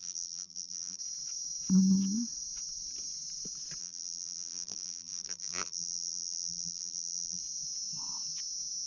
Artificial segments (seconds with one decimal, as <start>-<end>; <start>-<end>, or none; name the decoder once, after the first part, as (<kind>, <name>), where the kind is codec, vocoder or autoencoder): 0.0-1.0 (vocoder, BigVGAN v2); 3.8-7.4